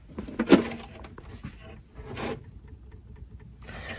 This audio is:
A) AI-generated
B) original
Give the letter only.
B